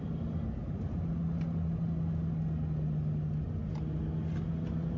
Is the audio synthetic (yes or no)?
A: no